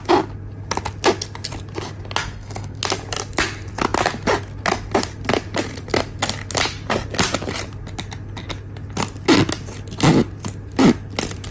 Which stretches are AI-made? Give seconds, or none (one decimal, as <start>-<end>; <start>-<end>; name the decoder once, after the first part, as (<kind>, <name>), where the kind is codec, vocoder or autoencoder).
2.2-2.8 (codec, SNAC)